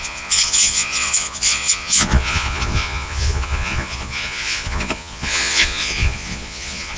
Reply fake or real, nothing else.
fake